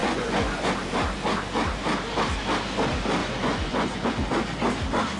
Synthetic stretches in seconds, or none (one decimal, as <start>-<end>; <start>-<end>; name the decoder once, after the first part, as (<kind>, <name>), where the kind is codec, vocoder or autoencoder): 0.0-0.7 (vocoder, Vocos); 3.2-4.1